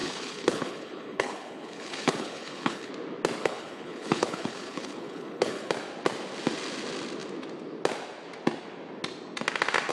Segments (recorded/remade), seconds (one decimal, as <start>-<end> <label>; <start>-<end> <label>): 0.0-2.9 remade; 2.9-3.4 recorded; 3.4-5.7 remade; 5.7-9.9 recorded

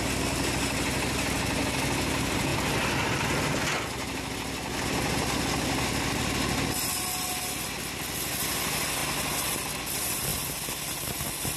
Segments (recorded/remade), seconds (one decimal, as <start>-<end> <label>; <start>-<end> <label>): 0.0-11.6 recorded

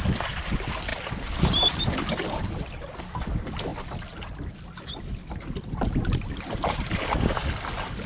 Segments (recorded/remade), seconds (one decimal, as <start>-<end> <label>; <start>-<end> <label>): 0.0-8.1 recorded

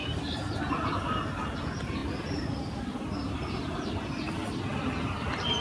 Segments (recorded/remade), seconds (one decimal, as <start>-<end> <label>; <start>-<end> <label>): 0.0-5.6 recorded

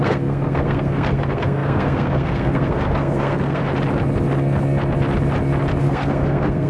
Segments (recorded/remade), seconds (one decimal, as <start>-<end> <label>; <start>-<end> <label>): 0.0-3.6 remade; 3.6-5.8 recorded; 5.8-6.7 remade